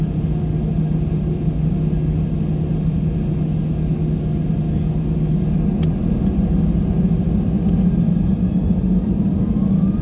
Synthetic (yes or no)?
no